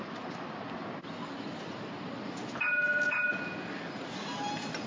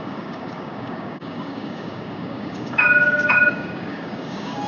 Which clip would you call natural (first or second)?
first